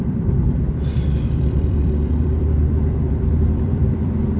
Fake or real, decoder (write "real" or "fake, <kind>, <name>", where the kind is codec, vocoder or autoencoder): fake, vocoder, BigVGAN v2